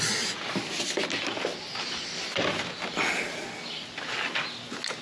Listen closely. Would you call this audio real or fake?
real